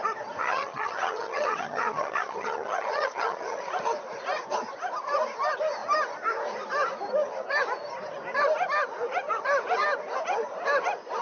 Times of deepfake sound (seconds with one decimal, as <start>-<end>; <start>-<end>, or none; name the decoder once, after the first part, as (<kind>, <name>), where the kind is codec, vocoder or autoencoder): 0.4-3.7 (vocoder, HiFi-GAN)